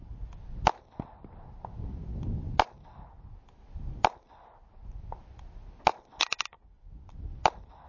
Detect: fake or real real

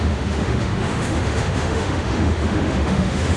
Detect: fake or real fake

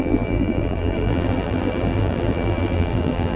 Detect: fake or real fake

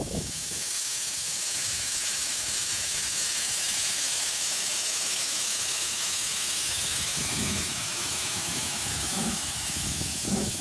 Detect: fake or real fake